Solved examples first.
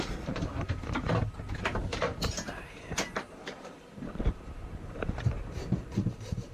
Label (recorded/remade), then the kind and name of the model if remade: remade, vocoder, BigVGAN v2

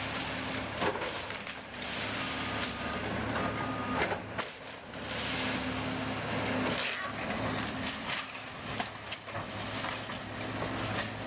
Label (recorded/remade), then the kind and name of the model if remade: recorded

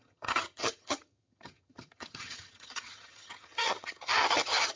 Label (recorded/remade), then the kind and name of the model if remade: remade, vocoder, HiFi-GAN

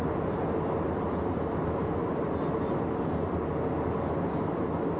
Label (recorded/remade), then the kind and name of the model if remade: recorded